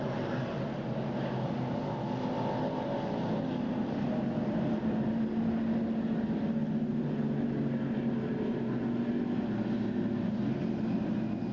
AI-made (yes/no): no